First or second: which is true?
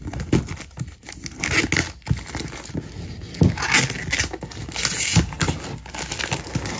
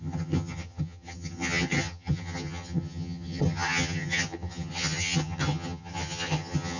first